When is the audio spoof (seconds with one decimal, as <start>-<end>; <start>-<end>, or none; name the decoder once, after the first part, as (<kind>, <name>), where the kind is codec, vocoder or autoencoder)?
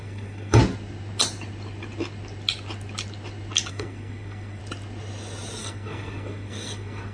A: 0.0-0.6 (codec, SNAC); 3.7-4.6; 5.6-7.1